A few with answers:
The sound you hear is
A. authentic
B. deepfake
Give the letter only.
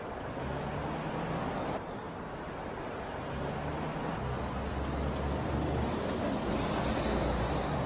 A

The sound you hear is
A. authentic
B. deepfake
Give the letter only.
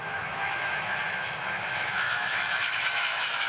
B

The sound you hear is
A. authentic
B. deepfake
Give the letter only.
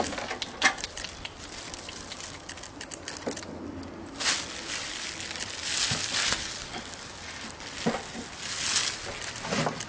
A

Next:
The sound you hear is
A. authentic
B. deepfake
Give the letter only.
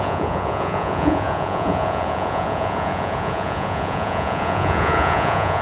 B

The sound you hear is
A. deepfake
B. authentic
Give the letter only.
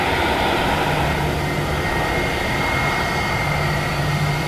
B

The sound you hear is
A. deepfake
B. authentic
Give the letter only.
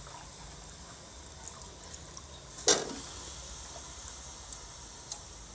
B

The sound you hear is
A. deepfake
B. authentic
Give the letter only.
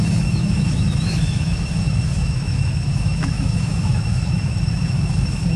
A